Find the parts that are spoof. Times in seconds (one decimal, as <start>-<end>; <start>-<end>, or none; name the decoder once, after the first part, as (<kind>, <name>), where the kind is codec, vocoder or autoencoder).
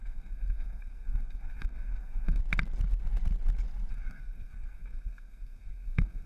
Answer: 0.0-2.4 (codec, SNAC); 3.9-6.3